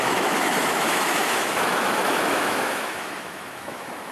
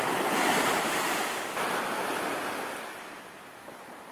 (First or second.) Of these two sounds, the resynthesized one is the first